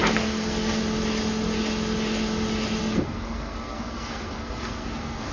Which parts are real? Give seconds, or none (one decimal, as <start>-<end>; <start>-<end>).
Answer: 0.8-2.8